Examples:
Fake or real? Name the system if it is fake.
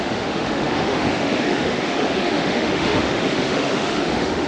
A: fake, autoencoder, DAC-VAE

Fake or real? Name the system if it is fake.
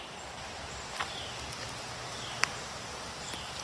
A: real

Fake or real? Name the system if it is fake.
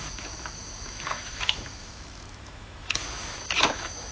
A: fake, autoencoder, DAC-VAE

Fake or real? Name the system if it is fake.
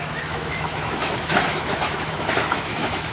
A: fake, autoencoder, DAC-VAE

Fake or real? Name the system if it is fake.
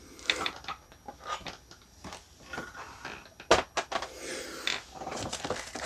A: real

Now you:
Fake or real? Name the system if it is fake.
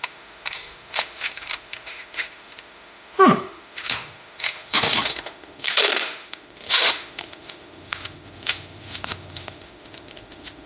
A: fake, autoencoder, DAC-VAE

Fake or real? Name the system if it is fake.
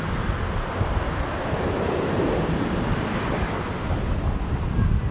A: real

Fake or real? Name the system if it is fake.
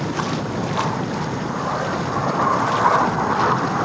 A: real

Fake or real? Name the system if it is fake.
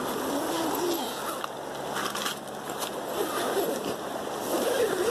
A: real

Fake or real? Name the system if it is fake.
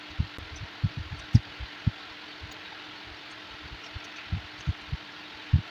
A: real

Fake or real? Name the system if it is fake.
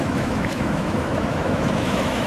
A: fake, autoencoder, DAC-VAE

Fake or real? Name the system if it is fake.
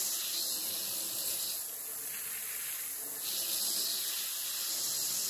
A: real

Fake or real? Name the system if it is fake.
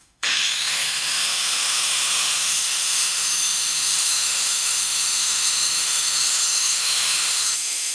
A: fake, autoencoder, DAC-VAE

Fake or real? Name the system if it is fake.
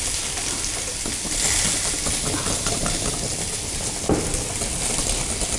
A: real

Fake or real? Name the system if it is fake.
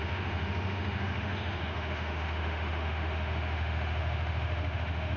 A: fake, autoencoder, DAC-VAE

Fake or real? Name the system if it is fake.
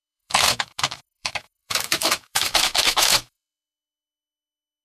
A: fake, autoencoder, DAC-VAE